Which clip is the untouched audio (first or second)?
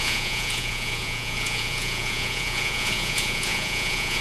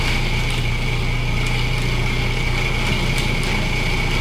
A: second